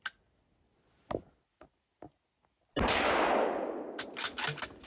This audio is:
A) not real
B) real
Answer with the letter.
B